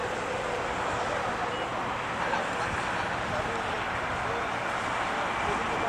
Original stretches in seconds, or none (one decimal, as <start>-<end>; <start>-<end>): 0.0-5.9